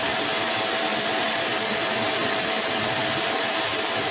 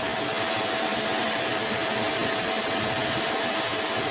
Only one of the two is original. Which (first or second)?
second